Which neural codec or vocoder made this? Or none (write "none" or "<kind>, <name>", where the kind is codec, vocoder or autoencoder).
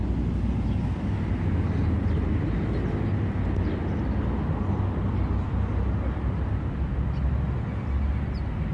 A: none